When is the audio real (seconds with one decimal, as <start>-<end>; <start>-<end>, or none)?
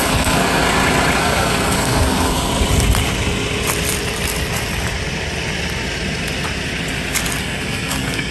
0.6-1.2; 2.5-7.4